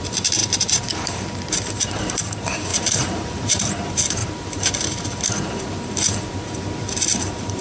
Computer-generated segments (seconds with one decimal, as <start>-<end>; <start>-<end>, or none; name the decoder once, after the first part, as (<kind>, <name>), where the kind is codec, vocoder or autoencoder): 0.0-7.6 (vocoder, BigVGAN v2)